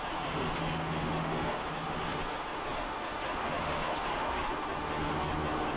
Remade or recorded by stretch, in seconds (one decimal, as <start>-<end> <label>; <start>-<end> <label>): 0.0-5.8 remade